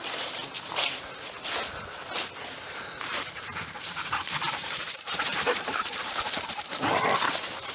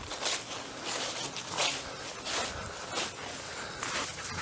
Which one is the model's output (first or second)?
first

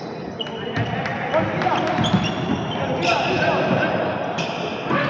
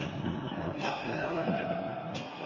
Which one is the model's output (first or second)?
second